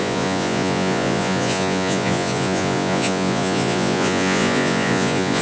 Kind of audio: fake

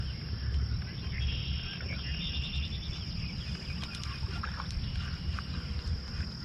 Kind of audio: real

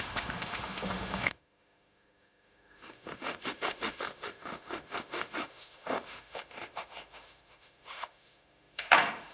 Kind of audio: fake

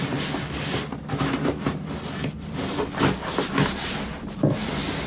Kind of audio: real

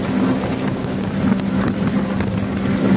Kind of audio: real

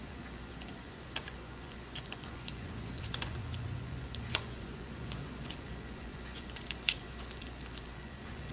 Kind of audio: fake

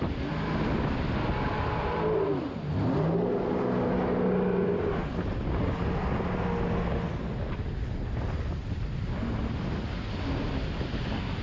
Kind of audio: real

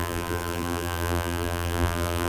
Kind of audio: fake